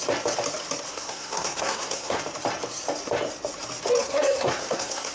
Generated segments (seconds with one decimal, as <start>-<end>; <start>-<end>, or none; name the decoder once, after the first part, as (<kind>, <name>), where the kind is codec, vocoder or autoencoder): 0.9-2.2 (codec, SNAC); 4.0-5.1